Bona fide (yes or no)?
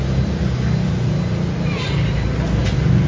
yes